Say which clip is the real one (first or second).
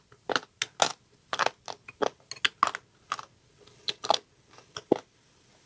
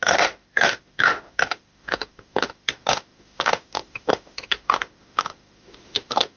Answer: first